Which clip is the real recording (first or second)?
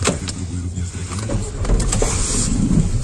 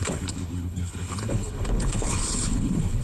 first